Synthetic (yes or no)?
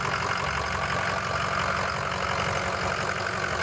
no